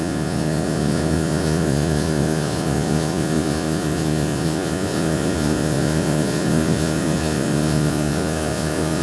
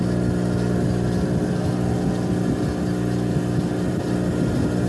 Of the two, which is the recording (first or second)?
second